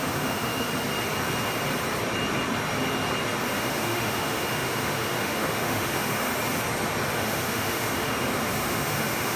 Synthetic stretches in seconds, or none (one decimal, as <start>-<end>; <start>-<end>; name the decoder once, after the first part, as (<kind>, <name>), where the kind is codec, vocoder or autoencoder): 0.0-0.7 (autoencoder, DAC-VAE); 3.5-6.3; 7.2-9.4